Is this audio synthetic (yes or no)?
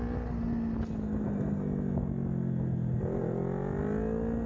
no